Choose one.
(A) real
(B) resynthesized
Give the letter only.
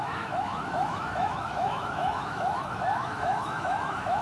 B